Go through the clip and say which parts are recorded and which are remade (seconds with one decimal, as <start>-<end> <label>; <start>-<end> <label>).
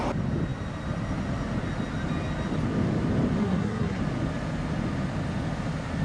0.0-3.4 recorded; 3.4-4.0 remade; 4.0-6.0 recorded